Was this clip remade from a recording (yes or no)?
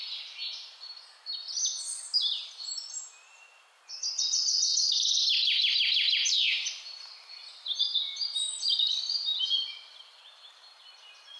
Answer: no